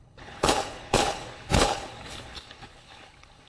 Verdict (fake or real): fake